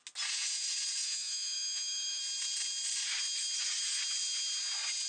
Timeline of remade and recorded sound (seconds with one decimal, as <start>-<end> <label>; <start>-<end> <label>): 0.0-1.0 recorded; 1.0-2.2 remade; 2.2-5.1 recorded